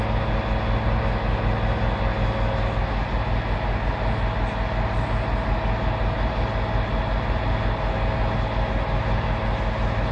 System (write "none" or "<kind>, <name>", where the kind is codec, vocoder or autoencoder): none